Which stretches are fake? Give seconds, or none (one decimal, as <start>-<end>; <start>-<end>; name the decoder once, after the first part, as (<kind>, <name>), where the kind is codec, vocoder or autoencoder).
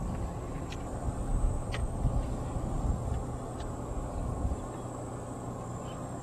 none